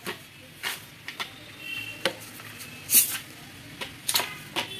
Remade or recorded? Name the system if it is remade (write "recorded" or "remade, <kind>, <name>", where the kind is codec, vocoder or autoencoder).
recorded